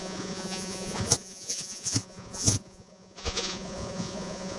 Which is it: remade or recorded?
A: remade